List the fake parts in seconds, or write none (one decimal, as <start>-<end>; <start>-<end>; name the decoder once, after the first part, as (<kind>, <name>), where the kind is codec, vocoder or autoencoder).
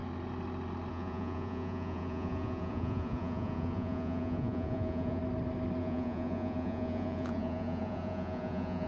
0.9-5.2 (vocoder, Vocos); 5.8-8.9